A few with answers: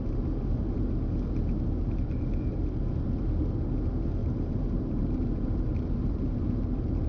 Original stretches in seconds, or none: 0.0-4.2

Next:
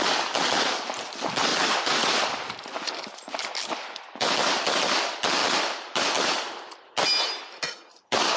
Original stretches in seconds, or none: 0.0-1.5; 3.3-5.4; 6.0-8.4

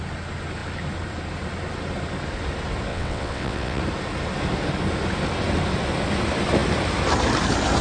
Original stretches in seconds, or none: 0.0-2.9; 3.8-7.8

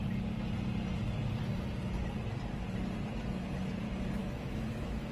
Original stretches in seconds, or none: 0.0-4.2

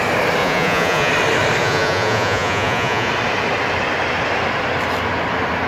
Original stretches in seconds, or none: 0.0-0.4; 1.1-1.6; 3.1-5.7

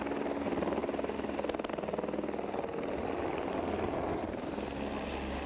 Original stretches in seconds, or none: 0.0-5.5

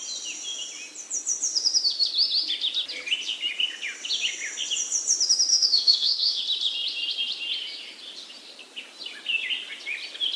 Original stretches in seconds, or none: 0.0-5.5; 6.4-10.4

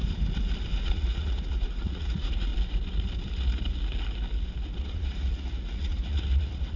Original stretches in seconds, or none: 0.0-0.8; 2.5-4.8